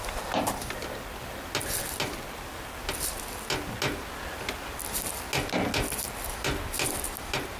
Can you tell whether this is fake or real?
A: real